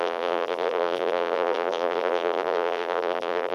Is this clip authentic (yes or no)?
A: no